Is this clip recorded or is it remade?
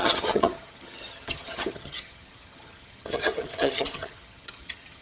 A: remade